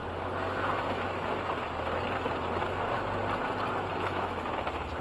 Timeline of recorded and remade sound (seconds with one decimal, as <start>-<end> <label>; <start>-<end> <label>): 0.0-3.9 recorded; 3.9-4.5 remade; 4.5-5.0 recorded